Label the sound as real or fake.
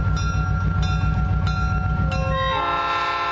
real